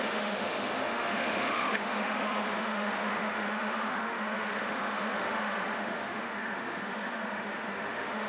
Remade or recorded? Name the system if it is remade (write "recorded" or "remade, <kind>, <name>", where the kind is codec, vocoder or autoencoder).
remade, autoencoder, DAC-VAE